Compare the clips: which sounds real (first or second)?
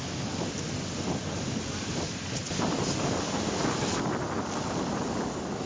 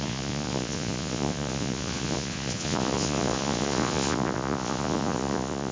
first